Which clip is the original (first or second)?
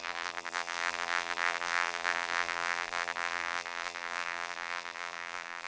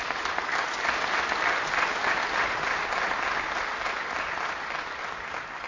second